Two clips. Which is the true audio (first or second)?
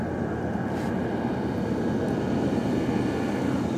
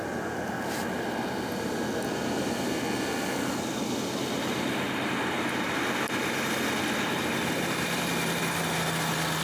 second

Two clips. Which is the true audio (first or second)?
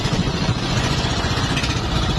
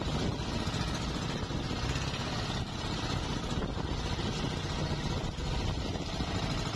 second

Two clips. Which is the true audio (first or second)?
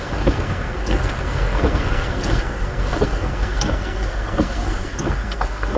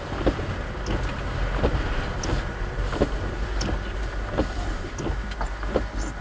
second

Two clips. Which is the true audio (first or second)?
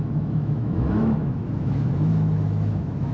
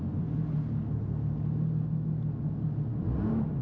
second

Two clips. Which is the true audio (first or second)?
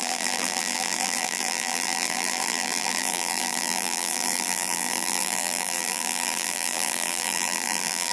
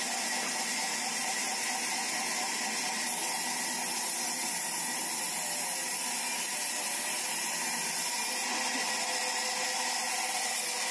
second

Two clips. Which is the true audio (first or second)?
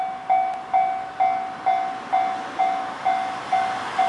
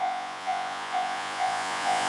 first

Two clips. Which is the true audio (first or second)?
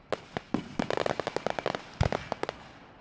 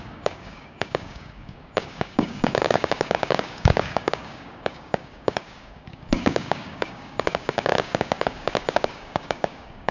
first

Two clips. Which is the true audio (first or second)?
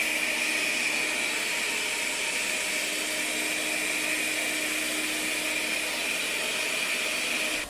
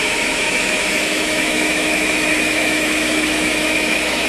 first